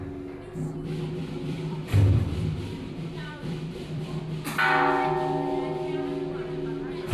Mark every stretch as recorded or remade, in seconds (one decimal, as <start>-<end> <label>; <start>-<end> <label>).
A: 0.0-1.2 recorded; 1.2-4.2 remade; 4.2-7.1 recorded